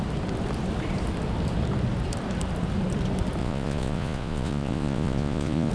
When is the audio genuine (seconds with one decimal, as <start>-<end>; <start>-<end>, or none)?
0.0-3.4